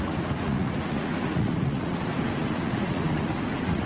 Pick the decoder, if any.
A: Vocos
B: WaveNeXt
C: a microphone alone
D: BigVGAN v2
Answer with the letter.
A